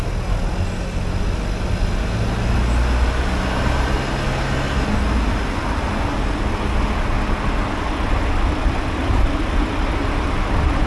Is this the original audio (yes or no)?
yes